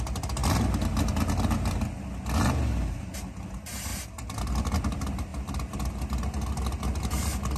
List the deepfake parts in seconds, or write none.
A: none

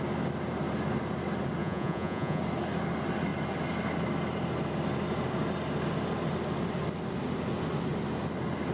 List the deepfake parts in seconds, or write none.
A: 1.6-2.4 (vocoder, Vocos)